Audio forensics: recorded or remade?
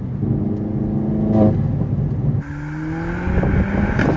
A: recorded